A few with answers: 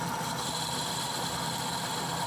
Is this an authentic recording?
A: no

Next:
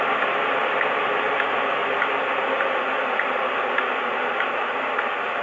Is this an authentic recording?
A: no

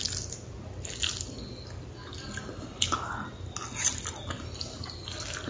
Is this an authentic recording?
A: yes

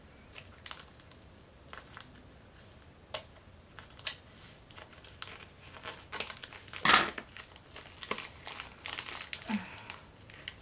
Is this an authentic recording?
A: yes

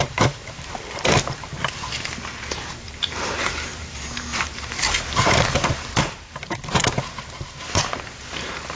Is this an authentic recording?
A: no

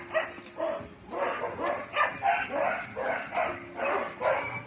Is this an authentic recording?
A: yes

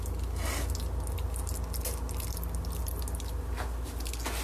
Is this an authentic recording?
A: yes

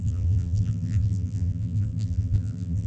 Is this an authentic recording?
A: no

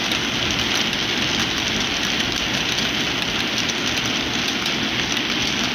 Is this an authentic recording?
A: yes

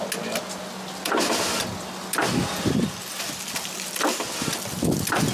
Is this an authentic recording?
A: yes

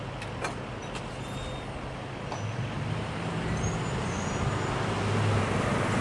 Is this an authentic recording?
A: yes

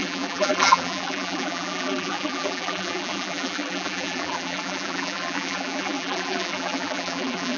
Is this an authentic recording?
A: no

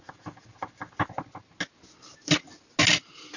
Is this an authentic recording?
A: yes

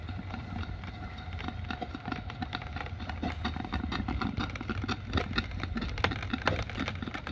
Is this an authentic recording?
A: yes